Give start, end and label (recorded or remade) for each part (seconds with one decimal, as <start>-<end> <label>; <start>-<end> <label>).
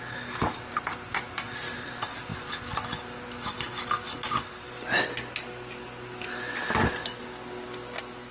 0.0-8.3 recorded